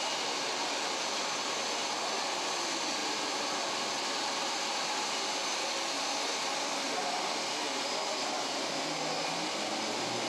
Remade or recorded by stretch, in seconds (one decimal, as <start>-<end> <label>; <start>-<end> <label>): 0.0-10.3 recorded